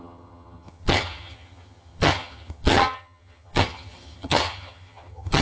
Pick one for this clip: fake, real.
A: fake